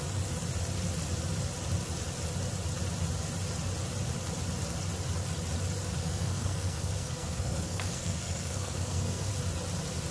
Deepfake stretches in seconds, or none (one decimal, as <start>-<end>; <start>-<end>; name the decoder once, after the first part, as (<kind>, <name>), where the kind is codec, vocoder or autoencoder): 6.0-9.3 (codec, SNAC)